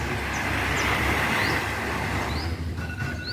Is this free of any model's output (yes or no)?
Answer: yes